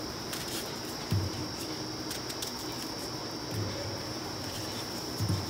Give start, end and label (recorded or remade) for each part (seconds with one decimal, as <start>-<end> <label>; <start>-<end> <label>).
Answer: 0.0-1.4 remade; 1.4-4.2 recorded; 4.2-5.5 remade